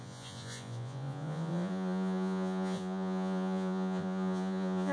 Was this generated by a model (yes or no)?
yes